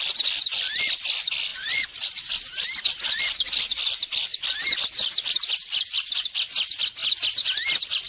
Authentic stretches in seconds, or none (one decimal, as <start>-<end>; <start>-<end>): 0.0-8.1